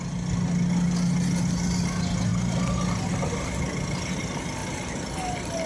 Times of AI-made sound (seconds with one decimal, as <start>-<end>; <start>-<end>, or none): none